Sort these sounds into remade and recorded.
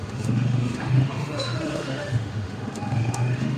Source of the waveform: remade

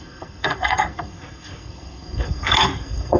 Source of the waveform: remade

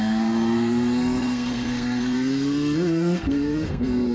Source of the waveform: remade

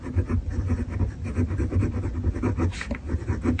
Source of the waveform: recorded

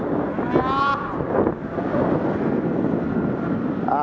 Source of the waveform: recorded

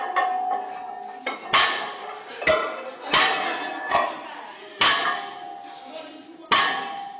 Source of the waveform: recorded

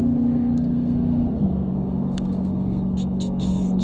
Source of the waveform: remade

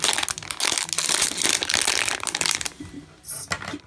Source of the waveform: recorded